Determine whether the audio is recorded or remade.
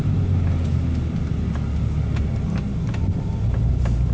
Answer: recorded